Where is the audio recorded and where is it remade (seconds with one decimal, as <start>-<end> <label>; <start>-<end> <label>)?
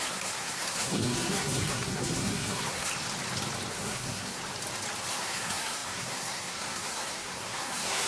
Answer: 0.0-2.9 remade; 2.9-3.7 recorded; 3.7-4.4 remade; 4.4-5.1 recorded; 5.1-8.1 remade